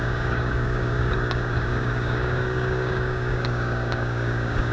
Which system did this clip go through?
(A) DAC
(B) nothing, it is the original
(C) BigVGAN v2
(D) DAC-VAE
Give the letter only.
A